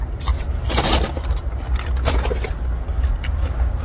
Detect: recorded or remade recorded